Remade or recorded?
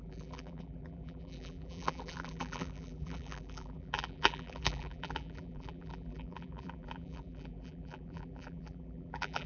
remade